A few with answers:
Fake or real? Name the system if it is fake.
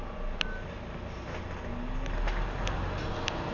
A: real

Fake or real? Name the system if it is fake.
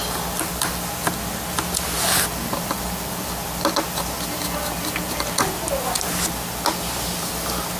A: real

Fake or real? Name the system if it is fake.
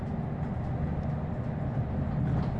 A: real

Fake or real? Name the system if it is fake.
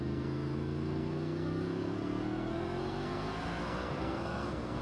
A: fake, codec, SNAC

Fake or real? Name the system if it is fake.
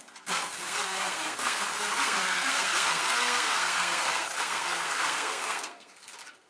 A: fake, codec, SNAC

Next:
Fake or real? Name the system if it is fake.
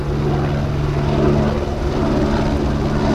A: real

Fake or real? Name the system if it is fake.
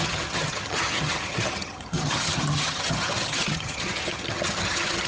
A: fake, vocoder, HiFi-GAN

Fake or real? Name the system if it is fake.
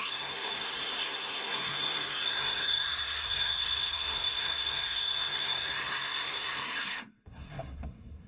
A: fake, codec, SNAC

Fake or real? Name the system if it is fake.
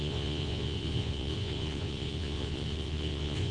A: fake, vocoder, Vocos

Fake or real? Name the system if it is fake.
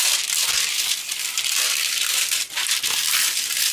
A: real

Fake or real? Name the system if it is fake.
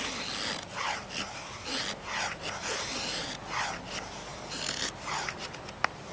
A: real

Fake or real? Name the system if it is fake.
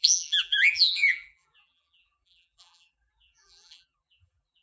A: fake, vocoder, BigVGAN v2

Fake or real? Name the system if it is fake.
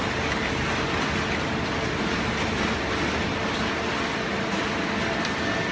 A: real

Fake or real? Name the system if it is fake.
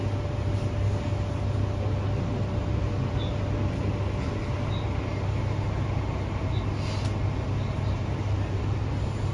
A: real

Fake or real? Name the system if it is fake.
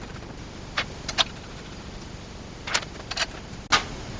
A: real